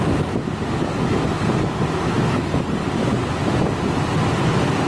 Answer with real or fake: real